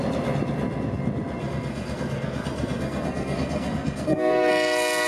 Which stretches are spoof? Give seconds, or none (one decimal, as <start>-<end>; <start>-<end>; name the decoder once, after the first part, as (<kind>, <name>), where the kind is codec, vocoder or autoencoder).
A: 1.4-4.5 (codec, SNAC)